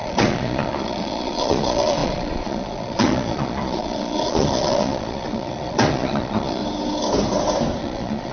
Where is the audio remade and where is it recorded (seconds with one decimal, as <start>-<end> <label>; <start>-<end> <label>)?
0.0-6.6 remade; 6.6-7.8 recorded; 7.8-8.3 remade